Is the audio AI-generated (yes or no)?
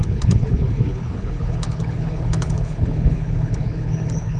yes